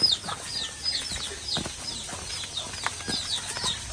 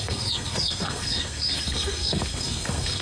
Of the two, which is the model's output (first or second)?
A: second